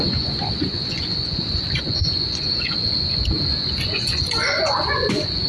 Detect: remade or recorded remade